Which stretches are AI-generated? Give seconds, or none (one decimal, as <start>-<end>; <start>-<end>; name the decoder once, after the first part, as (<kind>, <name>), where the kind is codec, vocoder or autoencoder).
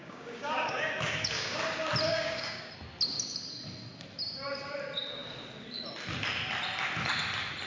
0.0-1.6 (codec, DAC); 2.1-2.7